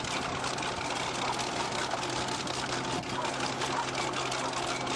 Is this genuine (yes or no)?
yes